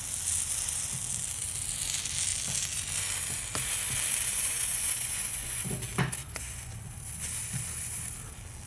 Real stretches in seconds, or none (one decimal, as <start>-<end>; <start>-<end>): 0.0-4.3; 5.7-6.2; 6.7-8.7